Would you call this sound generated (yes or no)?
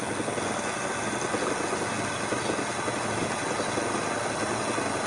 no